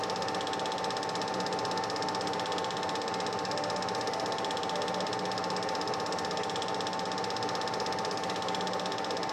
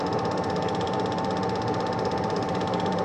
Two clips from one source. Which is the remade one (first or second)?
second